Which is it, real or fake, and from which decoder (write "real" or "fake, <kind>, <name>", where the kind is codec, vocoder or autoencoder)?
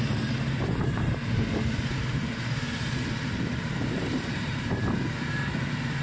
fake, vocoder, BigVGAN v2